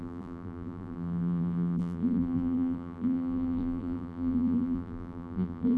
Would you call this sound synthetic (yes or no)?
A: yes